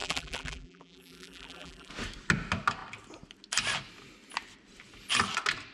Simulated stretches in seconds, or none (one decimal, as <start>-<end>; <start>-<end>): 0.0-1.9